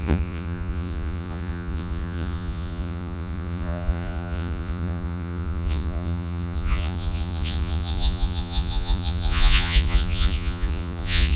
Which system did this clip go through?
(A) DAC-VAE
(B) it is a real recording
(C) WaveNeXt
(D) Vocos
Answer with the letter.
D